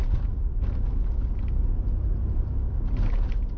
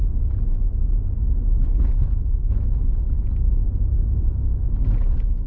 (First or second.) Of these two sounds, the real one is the first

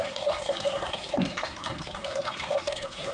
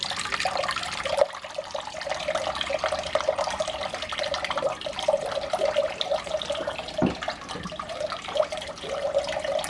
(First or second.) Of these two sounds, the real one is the second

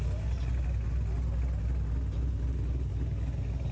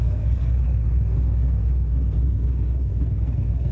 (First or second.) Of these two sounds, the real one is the first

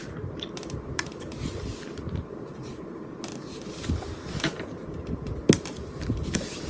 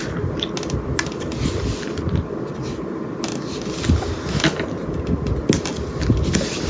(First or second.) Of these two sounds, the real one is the second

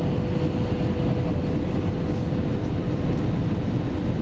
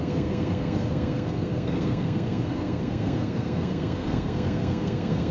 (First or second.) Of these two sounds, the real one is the first